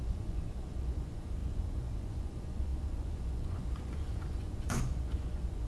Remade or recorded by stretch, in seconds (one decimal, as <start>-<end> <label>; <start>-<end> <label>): 0.0-5.7 remade